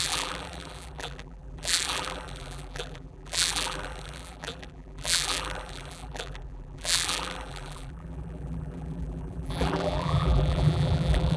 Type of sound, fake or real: fake